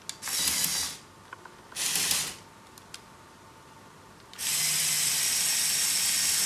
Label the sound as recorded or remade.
recorded